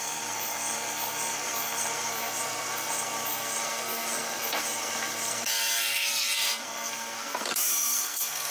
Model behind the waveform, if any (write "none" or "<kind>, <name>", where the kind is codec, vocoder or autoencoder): codec, SNAC